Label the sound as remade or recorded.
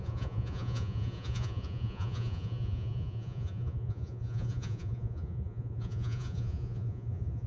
remade